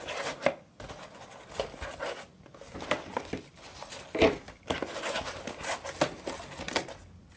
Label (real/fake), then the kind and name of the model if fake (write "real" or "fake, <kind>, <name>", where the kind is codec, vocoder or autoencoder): real